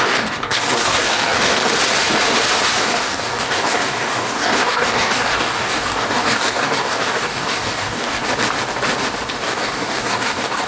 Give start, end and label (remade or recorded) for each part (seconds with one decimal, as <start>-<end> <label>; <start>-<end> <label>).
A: 0.0-1.6 remade; 1.6-2.8 recorded; 2.8-8.2 remade; 8.2-9.4 recorded; 9.4-10.7 remade